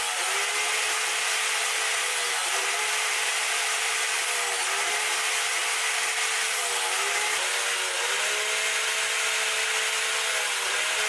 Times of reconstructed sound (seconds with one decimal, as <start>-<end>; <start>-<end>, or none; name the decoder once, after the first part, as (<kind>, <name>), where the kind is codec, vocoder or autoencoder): 2.4-3.9 (vocoder, BigVGAN v2); 5.6-6.2